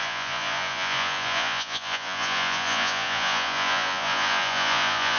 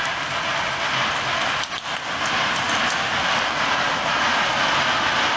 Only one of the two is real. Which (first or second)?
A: second